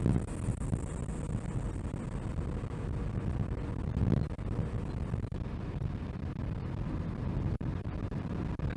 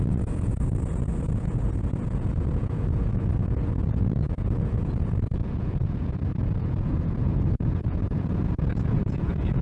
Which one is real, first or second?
first